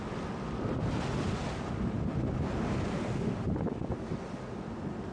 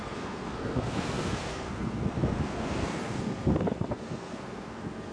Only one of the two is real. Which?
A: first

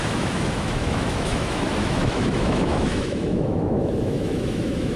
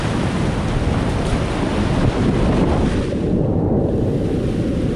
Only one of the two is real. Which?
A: second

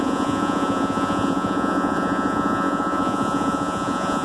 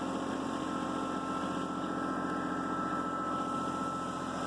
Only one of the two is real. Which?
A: second